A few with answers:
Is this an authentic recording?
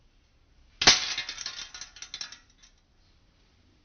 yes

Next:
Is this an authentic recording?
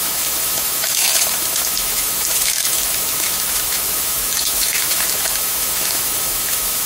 no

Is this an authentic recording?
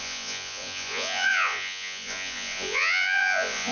no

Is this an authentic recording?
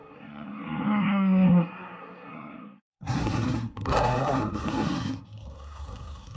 no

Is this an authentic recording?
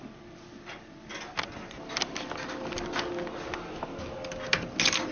yes